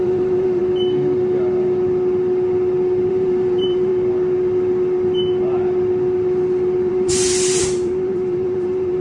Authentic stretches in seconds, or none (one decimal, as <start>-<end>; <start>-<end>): 0.6-3.1; 3.9-6.9